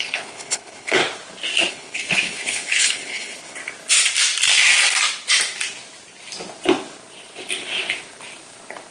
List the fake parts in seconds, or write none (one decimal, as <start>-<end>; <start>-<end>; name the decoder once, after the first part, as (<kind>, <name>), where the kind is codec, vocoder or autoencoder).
0.0-1.0 (codec, HILCodec); 1.7-3.6